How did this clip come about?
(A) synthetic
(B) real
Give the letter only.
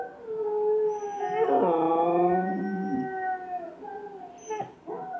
B